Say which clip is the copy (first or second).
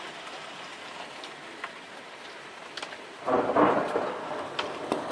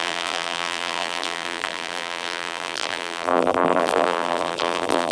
second